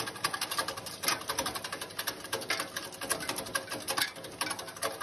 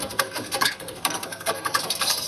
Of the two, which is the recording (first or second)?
first